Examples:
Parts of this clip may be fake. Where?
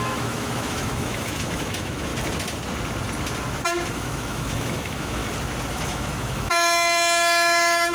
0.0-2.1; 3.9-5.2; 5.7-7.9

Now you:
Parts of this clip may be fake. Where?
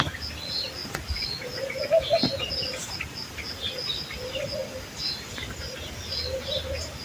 none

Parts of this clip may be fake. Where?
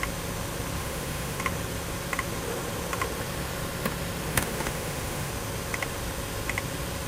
0.8-1.4; 4.3-5.3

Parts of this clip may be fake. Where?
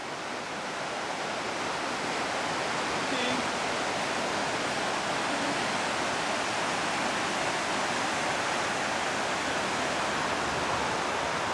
none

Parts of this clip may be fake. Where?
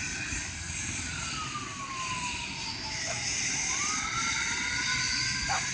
2.7-3.4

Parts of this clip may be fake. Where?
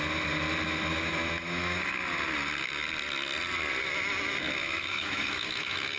0.9-1.9; 4.6-6.0